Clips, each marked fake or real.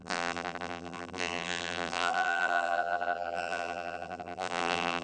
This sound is fake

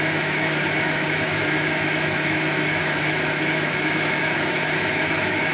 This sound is fake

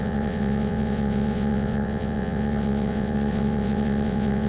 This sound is fake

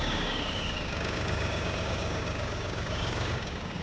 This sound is fake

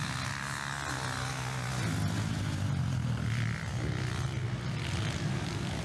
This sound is real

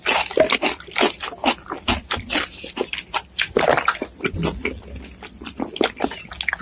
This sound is real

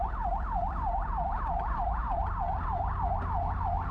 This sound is real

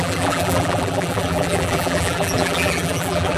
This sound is fake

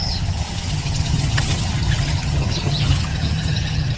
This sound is fake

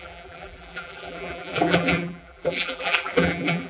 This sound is fake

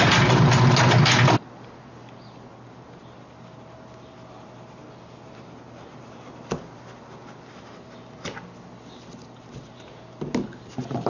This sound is real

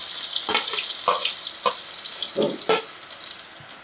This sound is real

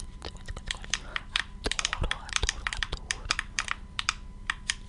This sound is fake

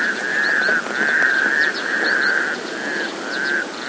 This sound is real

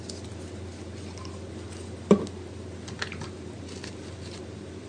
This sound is real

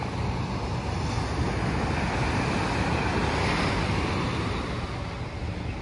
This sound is real